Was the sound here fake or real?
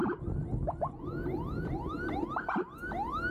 real